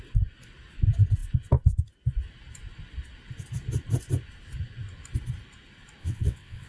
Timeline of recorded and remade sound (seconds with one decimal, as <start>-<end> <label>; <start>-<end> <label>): 0.0-6.0 recorded; 6.0-6.7 remade

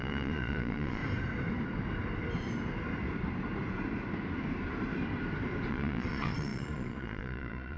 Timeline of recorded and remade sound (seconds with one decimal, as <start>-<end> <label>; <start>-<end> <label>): 0.0-1.0 remade; 1.0-5.7 recorded; 5.7-7.8 remade

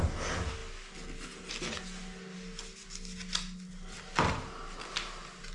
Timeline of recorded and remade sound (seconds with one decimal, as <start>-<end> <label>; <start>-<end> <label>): 0.0-5.5 recorded

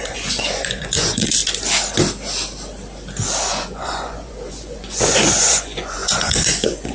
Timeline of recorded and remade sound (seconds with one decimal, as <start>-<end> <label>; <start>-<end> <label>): 0.0-1.4 remade; 1.4-3.4 recorded; 3.4-6.9 remade